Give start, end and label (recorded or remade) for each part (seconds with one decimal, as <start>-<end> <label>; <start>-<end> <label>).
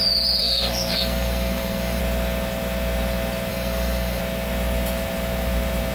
0.0-0.4 recorded; 0.4-2.0 remade; 2.0-3.5 recorded; 3.5-4.2 remade; 4.2-5.9 recorded